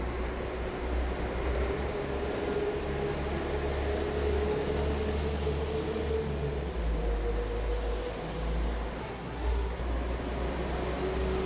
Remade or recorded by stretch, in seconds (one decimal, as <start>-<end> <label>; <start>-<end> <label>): 0.0-9.0 recorded; 9.0-9.8 remade; 9.8-11.5 recorded